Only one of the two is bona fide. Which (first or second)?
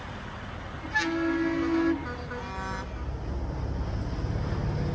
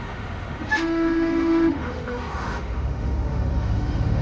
first